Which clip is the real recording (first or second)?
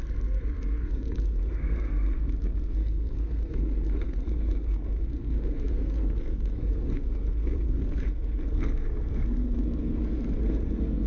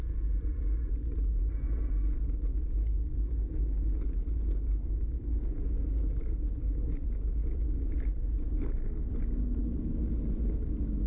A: second